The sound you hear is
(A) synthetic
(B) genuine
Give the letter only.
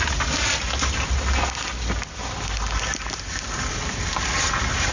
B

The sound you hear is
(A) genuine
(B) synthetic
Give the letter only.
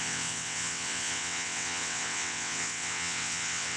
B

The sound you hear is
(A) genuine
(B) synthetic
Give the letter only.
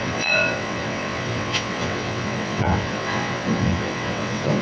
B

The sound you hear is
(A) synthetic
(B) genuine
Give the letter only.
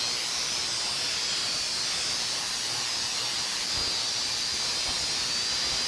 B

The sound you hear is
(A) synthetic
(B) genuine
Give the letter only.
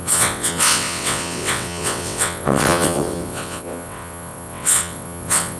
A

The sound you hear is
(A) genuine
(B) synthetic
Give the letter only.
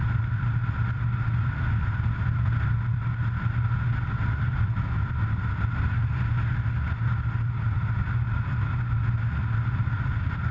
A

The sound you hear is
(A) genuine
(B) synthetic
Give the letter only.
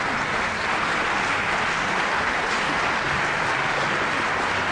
A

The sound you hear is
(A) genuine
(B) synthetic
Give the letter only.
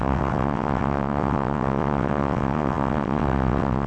B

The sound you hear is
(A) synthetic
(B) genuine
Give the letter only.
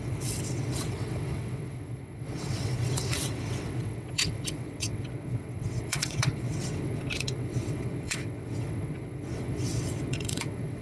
A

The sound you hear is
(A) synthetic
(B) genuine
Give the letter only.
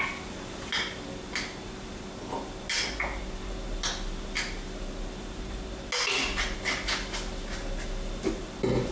B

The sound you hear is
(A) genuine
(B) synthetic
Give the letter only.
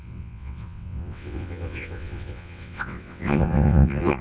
B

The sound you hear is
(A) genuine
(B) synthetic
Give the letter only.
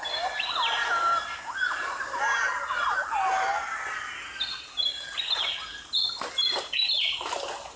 A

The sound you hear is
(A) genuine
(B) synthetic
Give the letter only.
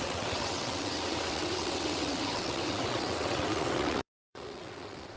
B